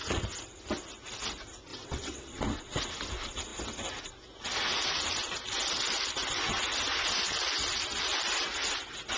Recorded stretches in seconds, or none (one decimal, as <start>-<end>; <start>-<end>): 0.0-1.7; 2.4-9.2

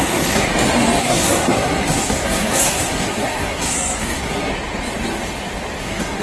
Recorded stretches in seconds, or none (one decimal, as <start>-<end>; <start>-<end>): 0.5-1.0; 4.5-5.8

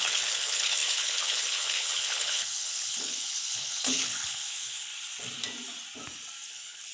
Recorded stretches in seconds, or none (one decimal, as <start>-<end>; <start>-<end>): 4.9-6.5

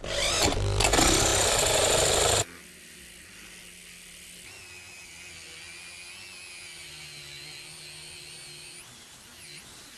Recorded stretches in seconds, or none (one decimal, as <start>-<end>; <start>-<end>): 0.0-10.0

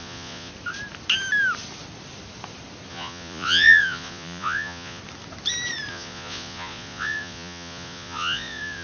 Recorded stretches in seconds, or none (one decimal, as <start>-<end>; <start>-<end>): 0.5-2.9; 5.0-5.9

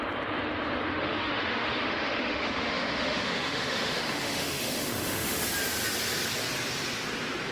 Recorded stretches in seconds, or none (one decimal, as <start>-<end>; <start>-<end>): 0.0-0.9; 5.4-7.5

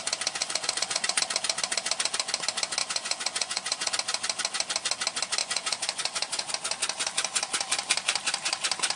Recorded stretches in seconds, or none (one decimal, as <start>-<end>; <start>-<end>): 0.0-0.4; 1.2-2.8; 3.9-5.4; 6.5-9.0

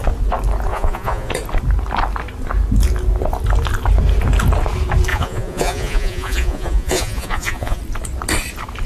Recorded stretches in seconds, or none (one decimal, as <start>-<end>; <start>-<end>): 0.0-0.7; 1.3-5.1; 7.8-8.9